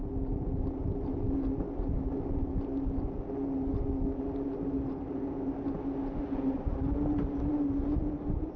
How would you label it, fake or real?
real